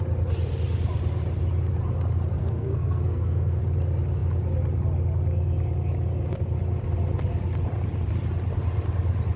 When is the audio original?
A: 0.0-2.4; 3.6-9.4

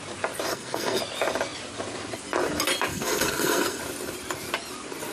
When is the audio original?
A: 0.0-0.5; 1.0-2.9; 3.8-5.1

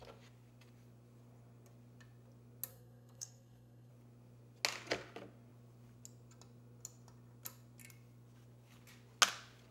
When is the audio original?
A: 0.0-2.7; 3.9-9.7

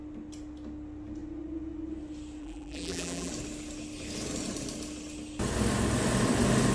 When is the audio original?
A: 0.0-2.4; 3.3-6.7

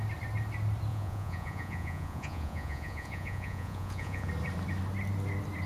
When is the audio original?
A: 0.0-0.9; 4.3-5.7

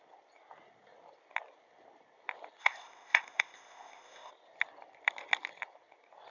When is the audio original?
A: 0.0-2.6; 4.3-6.3